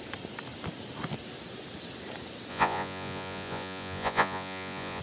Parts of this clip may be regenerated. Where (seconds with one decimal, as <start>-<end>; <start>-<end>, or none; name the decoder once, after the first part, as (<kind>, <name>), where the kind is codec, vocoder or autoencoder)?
2.5-5.0 (vocoder, Vocos)